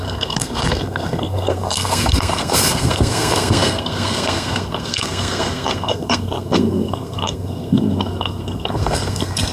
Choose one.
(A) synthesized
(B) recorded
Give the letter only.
A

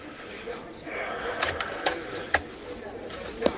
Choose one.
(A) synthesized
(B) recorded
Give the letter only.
B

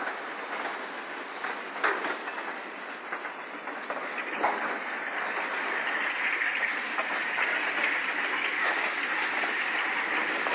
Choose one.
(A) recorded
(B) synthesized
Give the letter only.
A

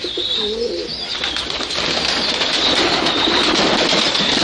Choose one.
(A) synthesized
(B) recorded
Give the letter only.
B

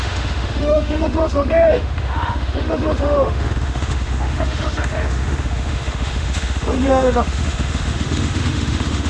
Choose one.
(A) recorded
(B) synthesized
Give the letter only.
B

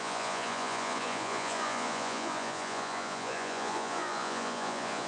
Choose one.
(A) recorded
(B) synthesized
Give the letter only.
B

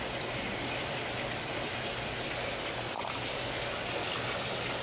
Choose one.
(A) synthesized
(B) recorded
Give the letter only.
B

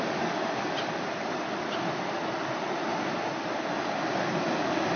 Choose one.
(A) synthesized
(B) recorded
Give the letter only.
B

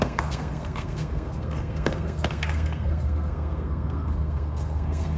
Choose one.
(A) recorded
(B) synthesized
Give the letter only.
B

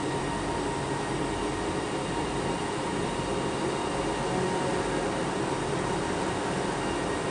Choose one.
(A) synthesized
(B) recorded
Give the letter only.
B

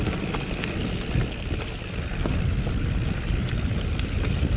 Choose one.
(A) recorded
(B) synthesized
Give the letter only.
A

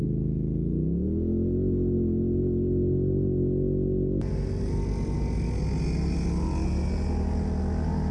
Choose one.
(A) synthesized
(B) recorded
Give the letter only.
B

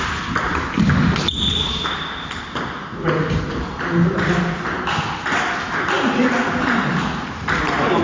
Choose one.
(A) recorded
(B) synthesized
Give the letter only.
A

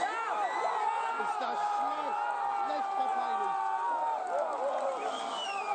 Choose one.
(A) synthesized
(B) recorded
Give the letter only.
B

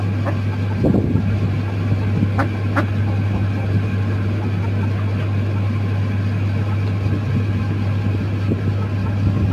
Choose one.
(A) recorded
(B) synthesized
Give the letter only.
A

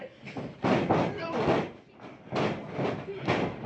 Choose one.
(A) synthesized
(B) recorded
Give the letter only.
B